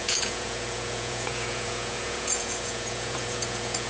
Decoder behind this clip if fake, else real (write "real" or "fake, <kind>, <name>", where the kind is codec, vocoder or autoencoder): fake, vocoder, Vocos